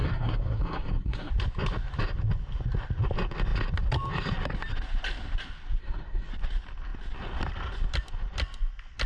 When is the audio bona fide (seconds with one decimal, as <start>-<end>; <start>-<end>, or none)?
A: 1.3-5.8; 6.3-9.1